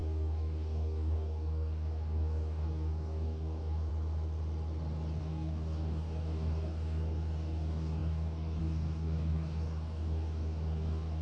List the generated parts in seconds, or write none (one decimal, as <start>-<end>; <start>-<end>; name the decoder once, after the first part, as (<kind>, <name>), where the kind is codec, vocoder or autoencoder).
0.0-3.9 (codec, DAC); 5.2-11.2